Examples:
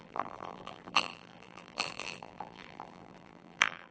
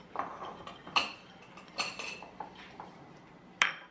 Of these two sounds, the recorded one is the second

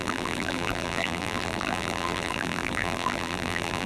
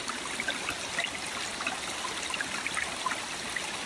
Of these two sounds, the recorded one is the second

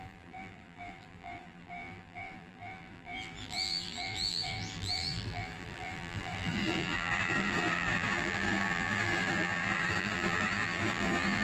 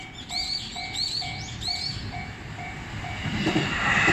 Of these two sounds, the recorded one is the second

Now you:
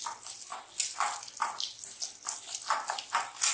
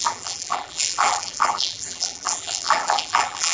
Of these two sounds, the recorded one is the first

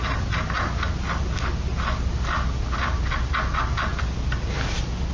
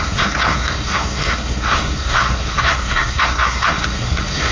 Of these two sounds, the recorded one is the first